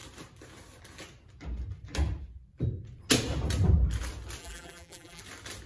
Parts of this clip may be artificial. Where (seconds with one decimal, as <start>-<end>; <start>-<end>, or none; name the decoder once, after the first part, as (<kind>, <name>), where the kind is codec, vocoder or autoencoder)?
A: 4.4-5.2 (vocoder, BigVGAN v2)